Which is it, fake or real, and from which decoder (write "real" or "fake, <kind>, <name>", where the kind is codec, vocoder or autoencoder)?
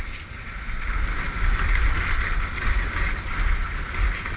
real